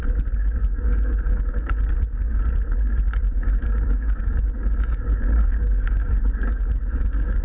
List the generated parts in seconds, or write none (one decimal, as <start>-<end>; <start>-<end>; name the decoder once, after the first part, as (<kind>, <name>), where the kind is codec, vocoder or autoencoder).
0.6-1.9 (codec, DAC); 3.2-7.4